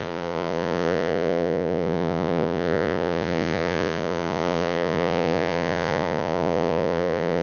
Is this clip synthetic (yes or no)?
yes